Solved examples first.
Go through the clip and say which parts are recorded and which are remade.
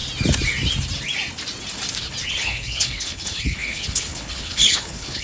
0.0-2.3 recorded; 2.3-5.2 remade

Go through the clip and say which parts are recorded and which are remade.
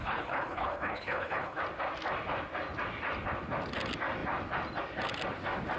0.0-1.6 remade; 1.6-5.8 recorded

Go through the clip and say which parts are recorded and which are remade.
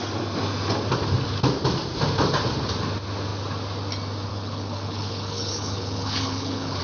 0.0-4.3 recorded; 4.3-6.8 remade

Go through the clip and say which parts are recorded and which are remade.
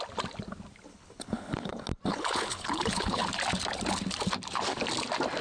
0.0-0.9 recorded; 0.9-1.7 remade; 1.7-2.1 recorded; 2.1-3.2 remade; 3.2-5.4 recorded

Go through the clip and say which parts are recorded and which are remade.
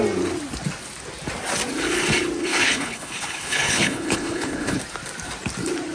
0.0-2.4 recorded; 2.4-4.8 remade; 4.8-5.9 recorded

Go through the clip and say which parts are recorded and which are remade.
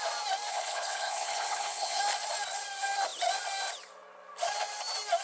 0.0-0.5 recorded; 0.5-2.0 remade; 2.0-5.2 recorded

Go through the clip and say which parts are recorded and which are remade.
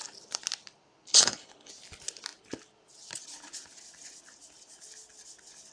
0.0-1.1 recorded; 1.1-1.7 remade; 1.7-5.7 recorded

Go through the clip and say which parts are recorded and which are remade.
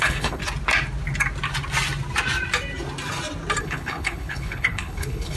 0.0-0.4 remade; 0.4-3.6 recorded; 3.6-5.4 remade